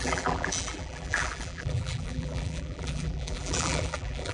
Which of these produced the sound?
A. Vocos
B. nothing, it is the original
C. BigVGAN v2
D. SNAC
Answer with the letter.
C